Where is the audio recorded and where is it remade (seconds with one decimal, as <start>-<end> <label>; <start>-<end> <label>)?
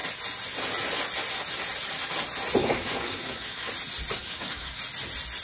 0.0-2.6 recorded; 2.6-3.7 remade; 3.7-4.2 recorded; 4.2-4.8 remade; 4.8-5.4 recorded